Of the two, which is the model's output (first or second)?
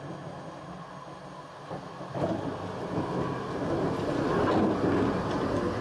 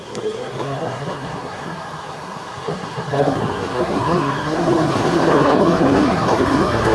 second